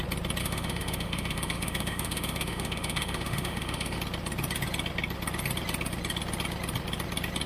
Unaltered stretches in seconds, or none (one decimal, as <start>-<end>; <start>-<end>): 0.0-0.4; 4.0-7.5